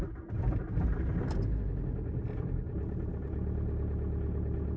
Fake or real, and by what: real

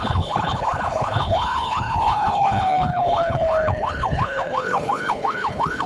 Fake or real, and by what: fake, codec, HILCodec